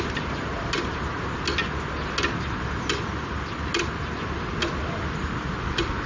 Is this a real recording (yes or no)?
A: yes